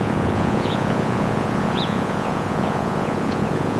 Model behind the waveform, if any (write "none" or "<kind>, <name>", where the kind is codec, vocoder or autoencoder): vocoder, Vocos